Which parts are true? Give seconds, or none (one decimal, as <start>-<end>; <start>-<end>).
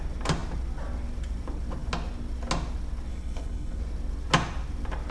0.0-3.1; 3.8-5.1